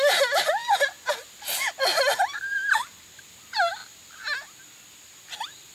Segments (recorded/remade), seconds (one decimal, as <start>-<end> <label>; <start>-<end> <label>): 0.0-2.1 recorded; 2.1-3.3 remade; 3.3-5.7 recorded